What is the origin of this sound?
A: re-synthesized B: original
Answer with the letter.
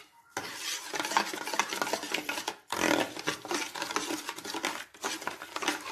B